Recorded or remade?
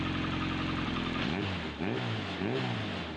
recorded